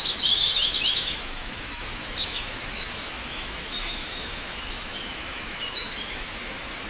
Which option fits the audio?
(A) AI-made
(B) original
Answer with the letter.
A